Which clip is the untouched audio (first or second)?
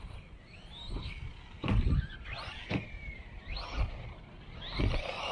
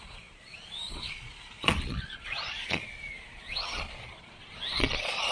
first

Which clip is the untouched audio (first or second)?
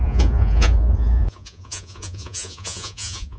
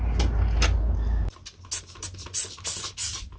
second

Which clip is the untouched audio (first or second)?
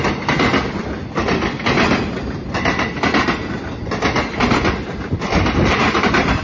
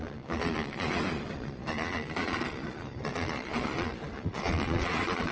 first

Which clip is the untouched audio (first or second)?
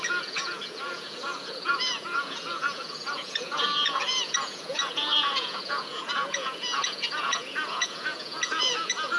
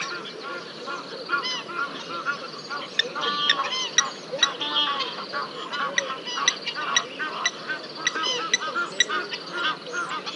second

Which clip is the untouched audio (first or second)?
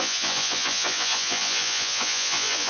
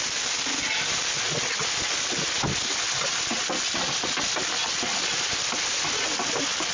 second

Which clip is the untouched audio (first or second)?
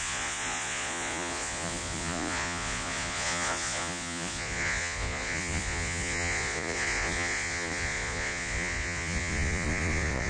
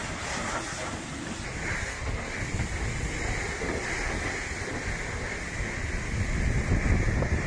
second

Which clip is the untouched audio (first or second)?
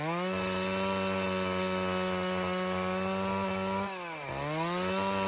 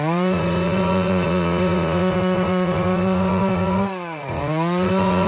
first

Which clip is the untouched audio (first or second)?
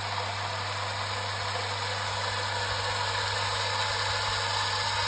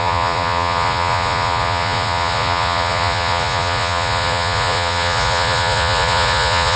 first